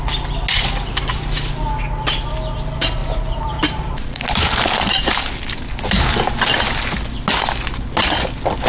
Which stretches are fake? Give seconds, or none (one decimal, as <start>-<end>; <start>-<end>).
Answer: 3.0-5.2